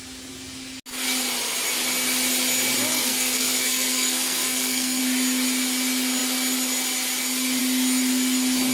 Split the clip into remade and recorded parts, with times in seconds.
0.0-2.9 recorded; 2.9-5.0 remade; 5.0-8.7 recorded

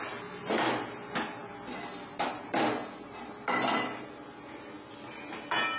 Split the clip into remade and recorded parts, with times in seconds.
0.0-5.8 recorded

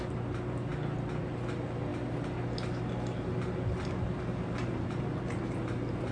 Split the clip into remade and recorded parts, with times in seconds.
0.0-6.1 recorded